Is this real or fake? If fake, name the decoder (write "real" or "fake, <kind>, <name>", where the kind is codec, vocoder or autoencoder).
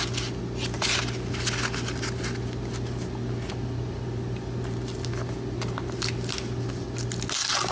real